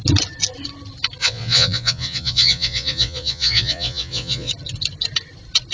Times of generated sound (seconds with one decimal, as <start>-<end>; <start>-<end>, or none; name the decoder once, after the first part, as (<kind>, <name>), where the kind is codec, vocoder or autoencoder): 1.2-4.5 (vocoder, Vocos)